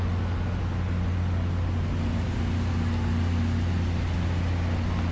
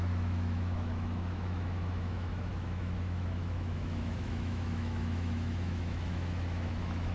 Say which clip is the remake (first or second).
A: second